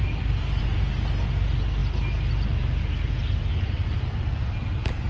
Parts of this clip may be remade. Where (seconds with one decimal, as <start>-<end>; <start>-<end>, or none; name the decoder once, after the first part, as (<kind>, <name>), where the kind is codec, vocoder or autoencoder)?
none